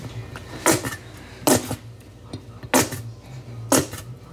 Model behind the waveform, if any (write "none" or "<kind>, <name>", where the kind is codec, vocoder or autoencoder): none